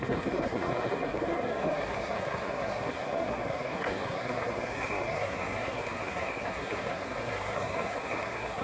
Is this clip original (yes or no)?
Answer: no